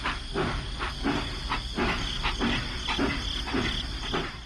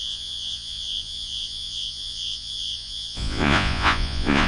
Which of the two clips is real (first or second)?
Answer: first